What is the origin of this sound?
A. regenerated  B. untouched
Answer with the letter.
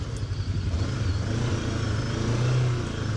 B